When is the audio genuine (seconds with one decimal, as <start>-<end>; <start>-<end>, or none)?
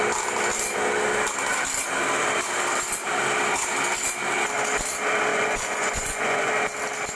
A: 0.0-5.3; 6.5-7.2